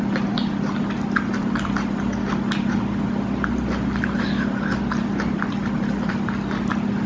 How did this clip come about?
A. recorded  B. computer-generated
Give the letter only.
A